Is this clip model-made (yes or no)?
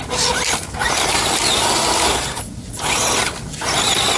no